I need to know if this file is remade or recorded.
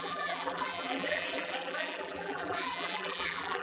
remade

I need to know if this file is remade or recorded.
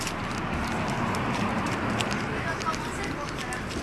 recorded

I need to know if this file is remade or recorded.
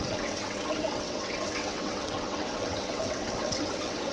remade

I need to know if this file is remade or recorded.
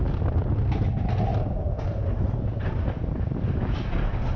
recorded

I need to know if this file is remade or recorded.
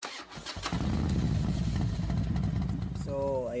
recorded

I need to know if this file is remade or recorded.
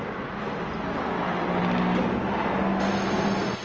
recorded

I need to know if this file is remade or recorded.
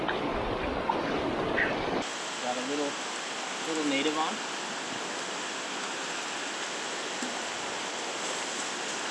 recorded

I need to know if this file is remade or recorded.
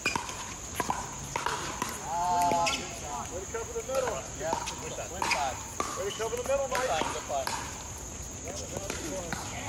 recorded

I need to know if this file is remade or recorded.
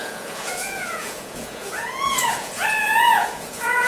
remade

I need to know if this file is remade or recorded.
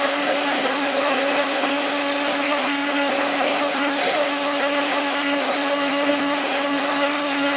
remade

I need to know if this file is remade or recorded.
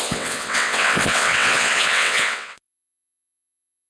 remade